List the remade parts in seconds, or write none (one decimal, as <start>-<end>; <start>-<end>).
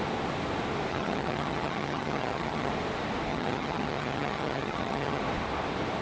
0.9-2.7; 3.3-5.2